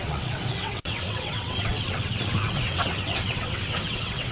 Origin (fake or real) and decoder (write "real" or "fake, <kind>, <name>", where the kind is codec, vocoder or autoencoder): fake, vocoder, WaveNeXt